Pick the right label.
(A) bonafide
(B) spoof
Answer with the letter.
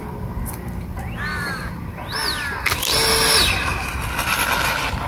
A